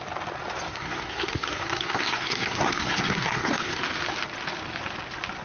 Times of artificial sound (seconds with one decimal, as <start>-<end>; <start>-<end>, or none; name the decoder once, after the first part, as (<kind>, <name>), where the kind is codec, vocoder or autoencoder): 0.7-3.8 (codec, SNAC)